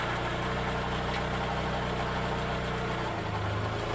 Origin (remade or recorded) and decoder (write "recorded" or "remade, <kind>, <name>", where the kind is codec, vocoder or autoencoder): recorded